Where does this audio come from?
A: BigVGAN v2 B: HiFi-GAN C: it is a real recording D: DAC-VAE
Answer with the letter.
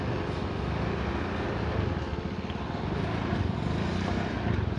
C